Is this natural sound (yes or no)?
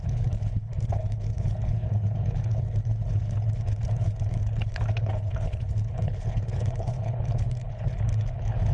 no